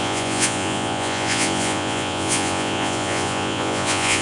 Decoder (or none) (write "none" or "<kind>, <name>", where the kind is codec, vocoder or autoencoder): vocoder, Vocos